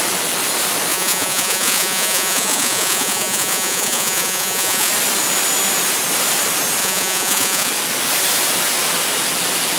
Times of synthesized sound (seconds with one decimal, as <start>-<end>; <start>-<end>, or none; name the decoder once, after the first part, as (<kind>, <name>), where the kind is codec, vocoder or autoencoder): 0.9-4.9 (vocoder, Vocos); 6.8-7.7